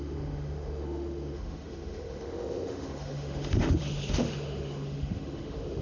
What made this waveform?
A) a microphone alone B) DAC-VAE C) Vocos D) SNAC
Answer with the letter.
B